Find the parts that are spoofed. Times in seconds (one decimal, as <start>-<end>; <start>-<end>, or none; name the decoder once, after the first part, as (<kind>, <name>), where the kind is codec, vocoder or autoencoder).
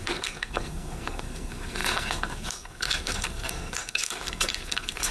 0.0-5.1 (codec, SNAC)